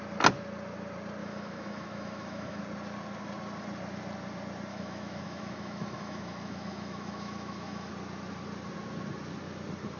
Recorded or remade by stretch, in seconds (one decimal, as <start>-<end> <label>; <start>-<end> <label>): 0.0-1.2 recorded; 1.2-2.6 remade; 2.6-4.7 recorded; 4.7-7.9 remade; 7.9-10.0 recorded